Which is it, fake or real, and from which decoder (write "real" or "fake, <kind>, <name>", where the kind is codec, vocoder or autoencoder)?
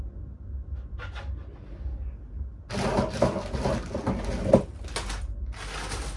real